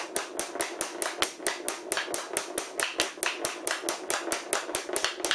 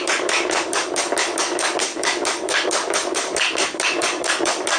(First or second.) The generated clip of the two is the second